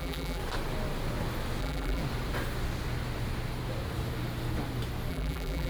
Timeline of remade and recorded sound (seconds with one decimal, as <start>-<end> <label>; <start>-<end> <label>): 0.0-0.4 remade; 0.4-1.6 recorded; 1.6-2.0 remade; 2.0-5.1 recorded; 5.1-5.7 remade